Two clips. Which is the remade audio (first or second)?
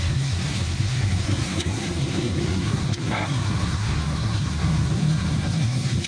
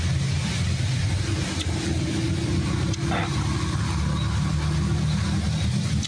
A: first